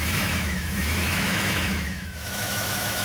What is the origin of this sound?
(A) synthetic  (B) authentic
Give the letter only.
A